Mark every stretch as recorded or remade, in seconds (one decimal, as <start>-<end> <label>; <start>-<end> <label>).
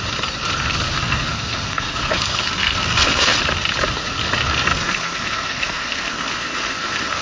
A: 0.0-0.7 recorded; 0.7-3.4 remade; 3.4-4.7 recorded; 4.7-7.2 remade